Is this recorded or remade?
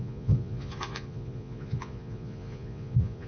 remade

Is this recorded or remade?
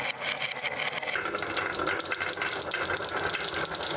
recorded